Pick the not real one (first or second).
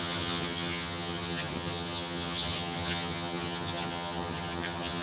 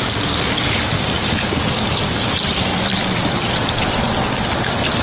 first